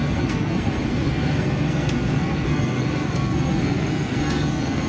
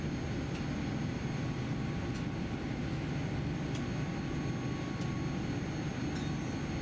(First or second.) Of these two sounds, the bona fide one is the second